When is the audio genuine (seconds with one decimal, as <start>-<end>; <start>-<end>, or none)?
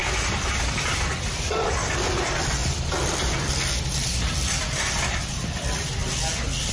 1.7-2.6; 3.5-4.6; 5.6-6.7